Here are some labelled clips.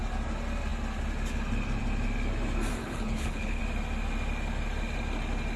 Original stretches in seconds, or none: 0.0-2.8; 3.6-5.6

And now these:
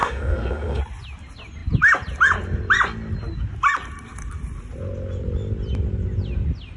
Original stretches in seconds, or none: 0.8-6.8

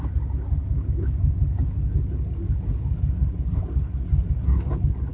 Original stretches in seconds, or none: 0.0-0.6; 1.2-5.1

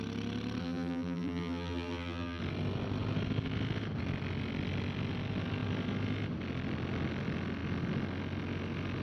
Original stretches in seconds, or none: 0.0-0.6; 2.4-9.0

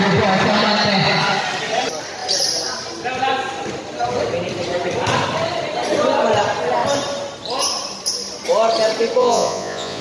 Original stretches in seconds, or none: 0.0-9.2